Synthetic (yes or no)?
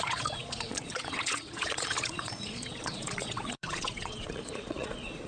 yes